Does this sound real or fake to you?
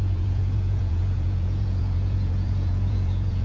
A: fake